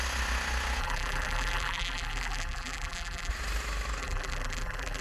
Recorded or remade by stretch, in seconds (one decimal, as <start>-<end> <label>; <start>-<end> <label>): 0.0-0.8 recorded; 0.8-3.3 remade; 3.3-4.0 recorded; 4.0-5.0 remade